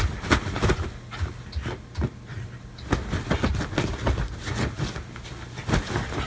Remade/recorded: recorded